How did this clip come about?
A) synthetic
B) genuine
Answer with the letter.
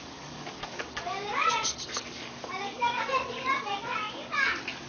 A